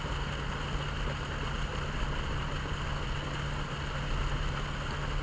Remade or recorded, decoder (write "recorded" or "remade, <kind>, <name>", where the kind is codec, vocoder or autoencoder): recorded